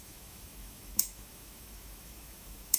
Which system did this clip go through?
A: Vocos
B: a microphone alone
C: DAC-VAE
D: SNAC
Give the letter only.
C